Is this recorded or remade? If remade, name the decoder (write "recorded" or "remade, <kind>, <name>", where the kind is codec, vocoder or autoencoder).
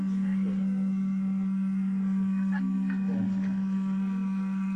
remade, codec, SNAC